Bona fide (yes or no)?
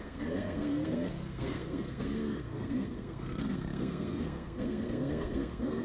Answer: no